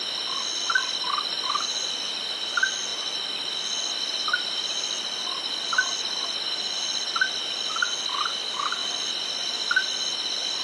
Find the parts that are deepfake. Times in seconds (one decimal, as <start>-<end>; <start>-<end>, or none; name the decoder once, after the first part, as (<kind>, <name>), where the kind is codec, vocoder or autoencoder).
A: none